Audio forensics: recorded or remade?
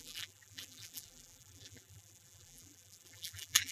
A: remade